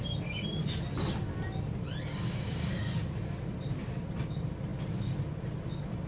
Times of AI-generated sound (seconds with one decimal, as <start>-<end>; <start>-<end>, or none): 2.1-2.7